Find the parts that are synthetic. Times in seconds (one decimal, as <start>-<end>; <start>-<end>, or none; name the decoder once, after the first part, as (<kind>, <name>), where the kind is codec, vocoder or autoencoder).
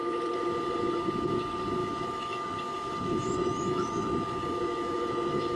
1.8-5.6 (autoencoder, DAC-VAE)